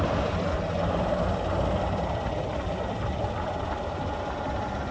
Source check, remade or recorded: recorded